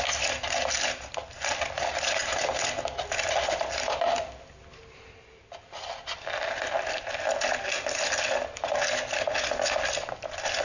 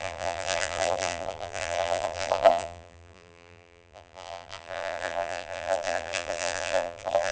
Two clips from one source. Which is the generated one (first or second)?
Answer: second